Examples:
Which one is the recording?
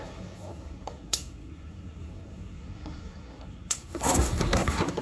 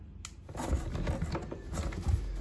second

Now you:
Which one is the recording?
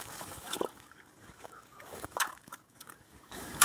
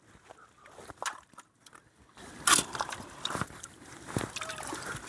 second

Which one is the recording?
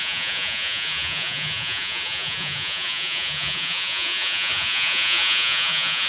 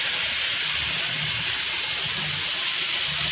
second